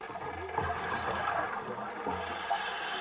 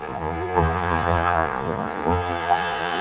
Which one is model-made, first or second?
second